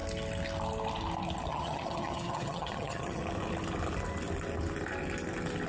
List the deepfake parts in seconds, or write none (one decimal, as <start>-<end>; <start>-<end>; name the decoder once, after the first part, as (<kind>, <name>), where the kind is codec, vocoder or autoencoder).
1.5-3.2 (vocoder, HiFi-GAN)